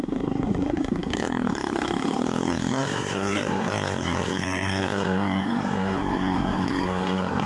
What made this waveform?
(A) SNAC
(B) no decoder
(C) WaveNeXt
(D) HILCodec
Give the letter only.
A